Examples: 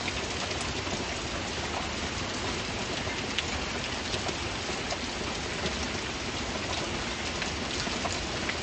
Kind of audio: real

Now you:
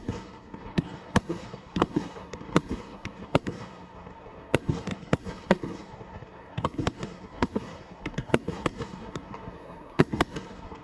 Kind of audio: fake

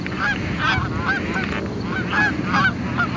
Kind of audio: real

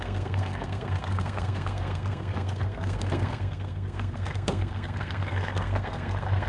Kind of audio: fake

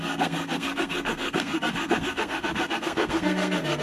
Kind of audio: fake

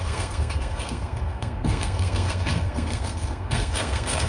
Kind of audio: fake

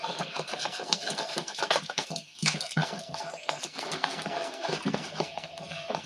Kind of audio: fake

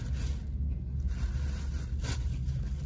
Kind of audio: real